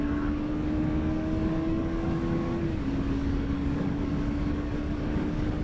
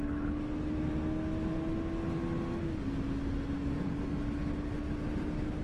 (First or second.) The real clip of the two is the second